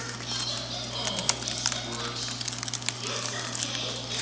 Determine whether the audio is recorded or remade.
recorded